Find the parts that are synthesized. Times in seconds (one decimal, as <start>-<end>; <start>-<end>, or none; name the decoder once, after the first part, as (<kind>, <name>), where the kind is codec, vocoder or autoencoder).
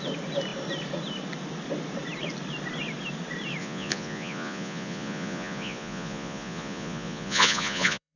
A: 3.6-8.2 (vocoder, Vocos)